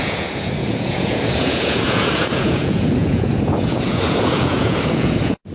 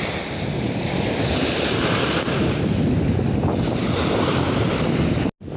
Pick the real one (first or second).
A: second